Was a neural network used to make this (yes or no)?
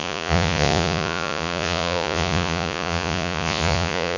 yes